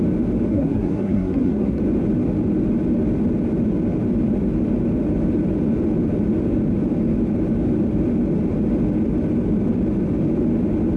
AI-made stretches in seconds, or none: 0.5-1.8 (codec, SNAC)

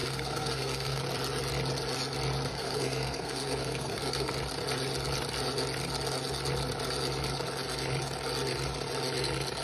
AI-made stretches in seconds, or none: 0.0-1.0 (codec, SNAC); 2.5-4.3

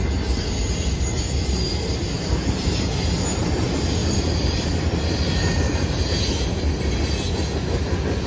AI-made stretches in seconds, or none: 4.0-4.6 (vocoder, BigVGAN v2); 5.4-6.9

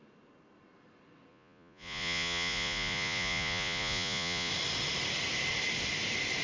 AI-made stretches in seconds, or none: 1.3-4.5 (vocoder, Vocos)

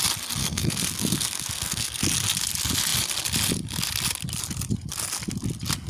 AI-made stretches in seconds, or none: 0.4-2.0 (codec, SNAC)